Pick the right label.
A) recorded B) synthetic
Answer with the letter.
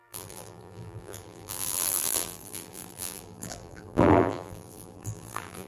B